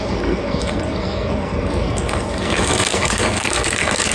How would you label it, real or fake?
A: fake